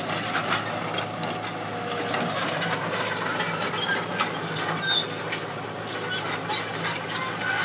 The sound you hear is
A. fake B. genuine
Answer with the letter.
B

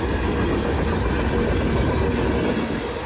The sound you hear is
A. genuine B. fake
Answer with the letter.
A